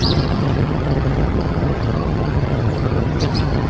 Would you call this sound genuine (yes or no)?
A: no